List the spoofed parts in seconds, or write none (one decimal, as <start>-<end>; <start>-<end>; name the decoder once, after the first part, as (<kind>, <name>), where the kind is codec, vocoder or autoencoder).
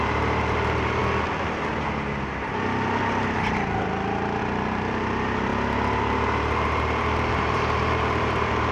0.0-1.0 (vocoder, BigVGAN v2); 4.4-5.5; 7.3-8.7